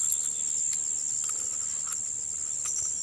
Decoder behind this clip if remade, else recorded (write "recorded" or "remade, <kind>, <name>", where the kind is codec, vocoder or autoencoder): recorded